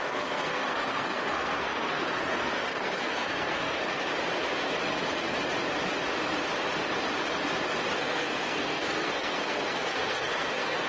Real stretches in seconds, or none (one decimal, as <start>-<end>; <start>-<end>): 4.0-8.0